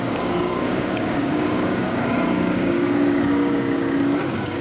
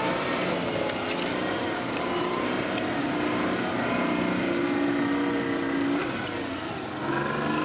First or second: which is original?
second